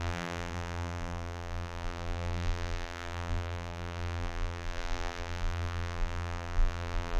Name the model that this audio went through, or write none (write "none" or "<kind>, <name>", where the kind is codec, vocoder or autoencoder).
vocoder, BigVGAN v2